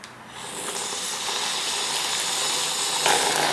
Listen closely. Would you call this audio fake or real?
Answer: real